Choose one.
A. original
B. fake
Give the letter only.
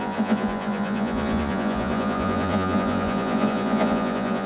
B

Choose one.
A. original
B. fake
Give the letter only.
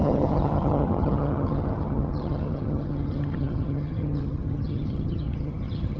B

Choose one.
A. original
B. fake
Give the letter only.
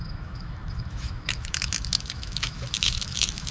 B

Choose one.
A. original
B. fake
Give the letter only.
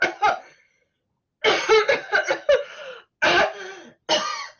A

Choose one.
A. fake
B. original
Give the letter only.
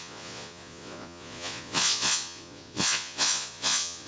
A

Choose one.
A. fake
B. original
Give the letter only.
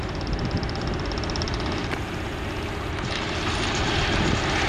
B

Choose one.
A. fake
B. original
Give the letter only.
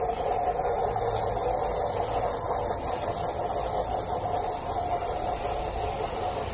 B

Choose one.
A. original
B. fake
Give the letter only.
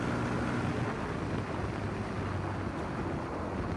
A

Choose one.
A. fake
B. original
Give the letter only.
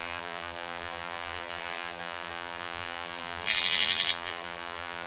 A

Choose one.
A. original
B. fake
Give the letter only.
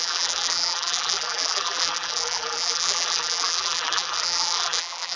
B